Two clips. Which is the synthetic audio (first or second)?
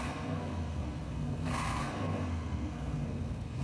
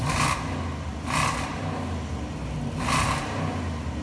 first